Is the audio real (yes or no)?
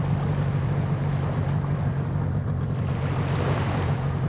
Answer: yes